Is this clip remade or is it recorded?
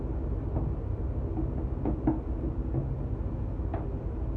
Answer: recorded